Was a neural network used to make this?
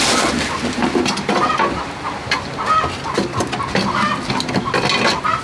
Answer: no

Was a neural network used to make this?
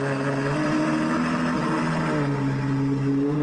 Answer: no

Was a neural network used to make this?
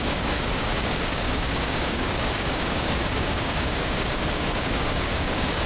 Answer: yes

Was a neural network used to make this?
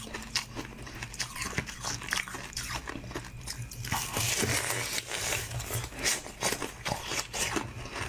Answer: no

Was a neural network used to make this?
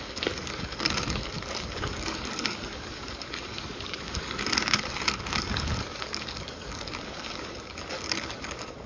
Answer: yes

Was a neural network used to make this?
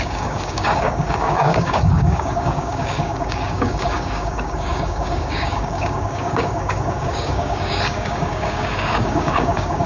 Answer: yes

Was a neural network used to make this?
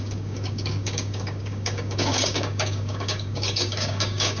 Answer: yes